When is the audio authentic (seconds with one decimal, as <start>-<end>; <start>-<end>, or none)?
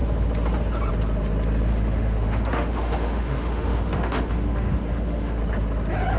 0.0-1.7; 5.4-6.2